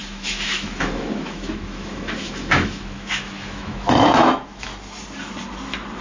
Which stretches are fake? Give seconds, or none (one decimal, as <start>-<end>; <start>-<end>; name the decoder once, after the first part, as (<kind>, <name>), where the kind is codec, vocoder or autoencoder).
0.0-4.7 (autoencoder, DAC-VAE)